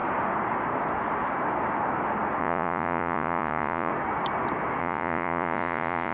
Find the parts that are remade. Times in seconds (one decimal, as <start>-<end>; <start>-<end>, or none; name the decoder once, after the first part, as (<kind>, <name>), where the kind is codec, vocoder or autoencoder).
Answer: 2.4-3.9 (vocoder, Vocos); 4.8-6.1